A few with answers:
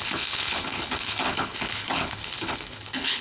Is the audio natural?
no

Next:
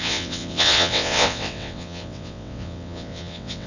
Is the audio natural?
no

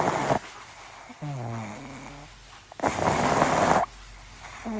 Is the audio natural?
yes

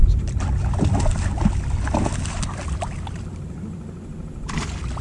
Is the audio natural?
yes